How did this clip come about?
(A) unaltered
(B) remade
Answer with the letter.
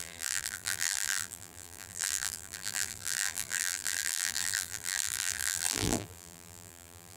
B